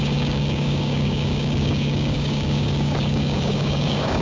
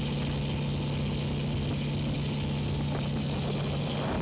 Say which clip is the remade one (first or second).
first